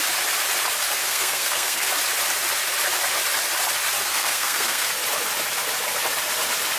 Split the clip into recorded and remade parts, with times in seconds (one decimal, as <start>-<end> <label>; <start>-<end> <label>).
0.0-1.0 recorded; 1.0-1.9 remade; 1.9-4.1 recorded; 4.1-4.9 remade; 4.9-6.8 recorded